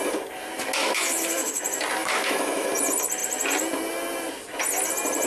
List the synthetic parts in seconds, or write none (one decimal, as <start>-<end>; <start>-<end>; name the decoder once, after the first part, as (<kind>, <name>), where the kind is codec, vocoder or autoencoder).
0.8-1.6 (autoencoder, DAC-VAE); 2.0-2.7